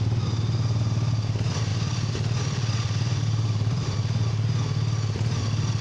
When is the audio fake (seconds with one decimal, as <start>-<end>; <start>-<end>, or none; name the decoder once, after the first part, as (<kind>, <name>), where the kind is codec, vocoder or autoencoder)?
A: 1.7-4.3 (vocoder, BigVGAN v2)